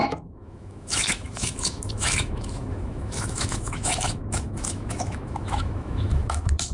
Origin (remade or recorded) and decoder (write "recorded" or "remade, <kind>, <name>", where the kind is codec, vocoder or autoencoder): remade, autoencoder, DAC-VAE